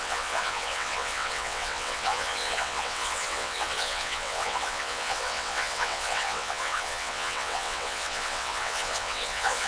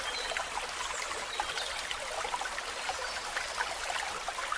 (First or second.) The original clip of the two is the second